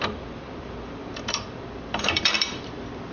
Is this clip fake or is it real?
fake